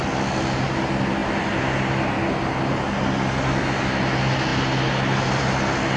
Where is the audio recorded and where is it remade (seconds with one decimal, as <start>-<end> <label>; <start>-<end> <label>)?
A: 0.0-6.0 recorded